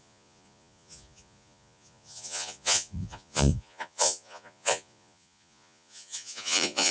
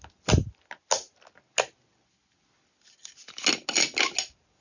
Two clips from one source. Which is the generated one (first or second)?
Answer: first